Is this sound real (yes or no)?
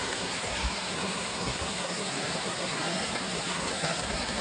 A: no